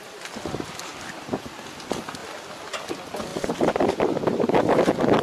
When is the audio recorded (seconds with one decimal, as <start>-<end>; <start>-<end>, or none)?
0.0-5.2